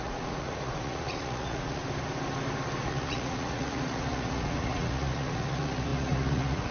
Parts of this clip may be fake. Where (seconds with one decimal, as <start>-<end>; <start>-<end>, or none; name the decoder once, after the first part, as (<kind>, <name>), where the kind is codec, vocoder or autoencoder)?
0.0-1.8 (vocoder, Vocos); 2.8-6.7